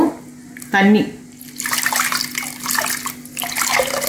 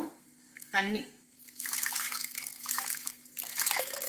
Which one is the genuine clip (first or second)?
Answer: first